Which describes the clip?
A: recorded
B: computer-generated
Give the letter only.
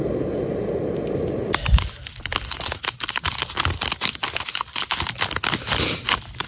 A